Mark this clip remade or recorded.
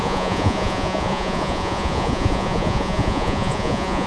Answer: remade